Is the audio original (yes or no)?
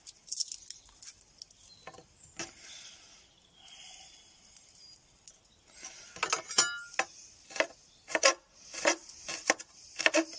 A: yes